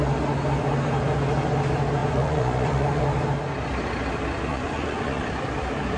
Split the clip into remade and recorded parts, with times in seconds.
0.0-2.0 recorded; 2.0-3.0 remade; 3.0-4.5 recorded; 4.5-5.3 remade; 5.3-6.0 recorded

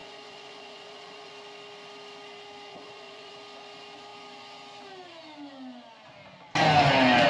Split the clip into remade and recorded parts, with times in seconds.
0.0-1.3 remade; 1.3-2.7 recorded; 2.7-3.3 remade; 3.3-7.3 recorded

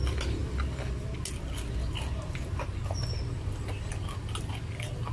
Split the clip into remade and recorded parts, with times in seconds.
0.0-5.1 recorded